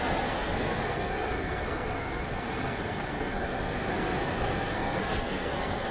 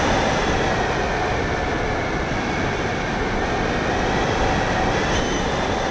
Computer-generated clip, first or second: first